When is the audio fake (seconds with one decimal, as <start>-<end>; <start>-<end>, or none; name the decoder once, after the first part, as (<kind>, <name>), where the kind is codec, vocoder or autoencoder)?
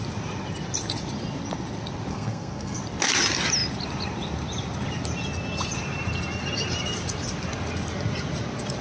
2.1-2.8 (codec, SNAC)